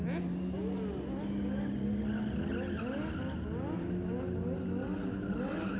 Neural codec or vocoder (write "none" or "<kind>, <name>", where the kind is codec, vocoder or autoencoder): none